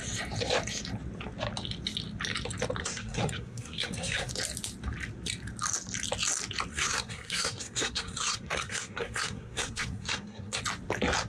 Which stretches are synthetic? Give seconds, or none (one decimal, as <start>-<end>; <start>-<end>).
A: 2.8-4.3; 6.7-10.6